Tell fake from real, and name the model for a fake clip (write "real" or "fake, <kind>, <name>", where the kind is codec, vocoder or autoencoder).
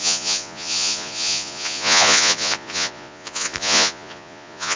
fake, vocoder, Vocos